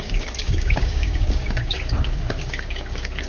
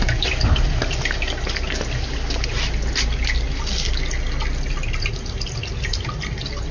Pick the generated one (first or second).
first